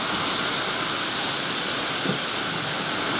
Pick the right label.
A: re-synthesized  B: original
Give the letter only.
B